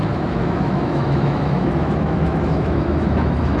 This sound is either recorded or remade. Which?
remade